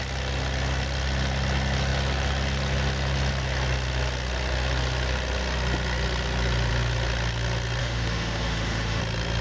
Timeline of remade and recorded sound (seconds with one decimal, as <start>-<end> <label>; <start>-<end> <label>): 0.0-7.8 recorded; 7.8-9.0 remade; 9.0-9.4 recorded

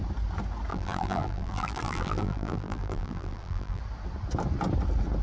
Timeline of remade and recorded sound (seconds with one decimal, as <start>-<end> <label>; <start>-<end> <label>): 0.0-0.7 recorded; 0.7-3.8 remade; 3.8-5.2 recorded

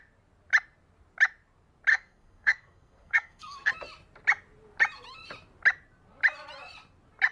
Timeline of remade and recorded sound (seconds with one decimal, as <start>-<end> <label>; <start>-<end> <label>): 0.0-1.9 recorded; 1.9-3.7 remade; 3.7-7.3 recorded

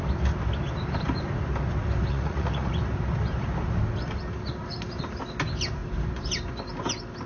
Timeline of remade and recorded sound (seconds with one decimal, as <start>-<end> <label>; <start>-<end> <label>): 0.0-2.0 recorded; 2.0-2.7 remade; 2.7-7.3 recorded

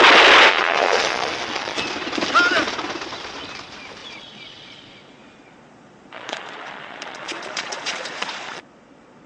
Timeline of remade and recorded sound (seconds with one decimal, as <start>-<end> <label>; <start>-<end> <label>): 0.0-0.5 recorded; 0.5-1.8 remade; 1.8-4.0 recorded; 4.0-9.3 remade

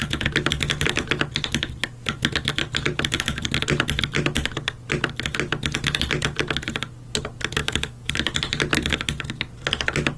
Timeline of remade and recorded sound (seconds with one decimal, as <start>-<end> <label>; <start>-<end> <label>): 0.0-7.6 recorded; 7.6-8.1 remade; 8.1-10.2 recorded